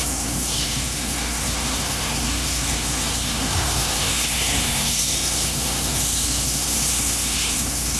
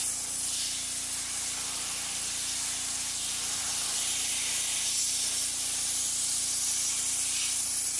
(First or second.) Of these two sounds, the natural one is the second